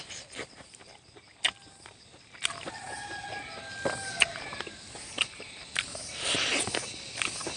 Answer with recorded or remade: recorded